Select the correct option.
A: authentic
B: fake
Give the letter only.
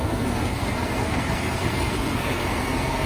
B